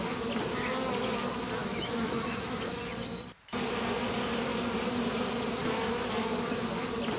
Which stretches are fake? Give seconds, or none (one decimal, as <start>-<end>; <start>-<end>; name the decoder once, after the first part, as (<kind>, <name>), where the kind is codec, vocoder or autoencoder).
1.6-2.8 (autoencoder, DAC-VAE)